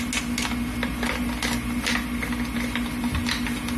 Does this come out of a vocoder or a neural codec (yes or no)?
no